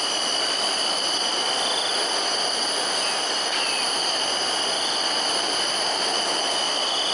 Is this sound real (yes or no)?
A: yes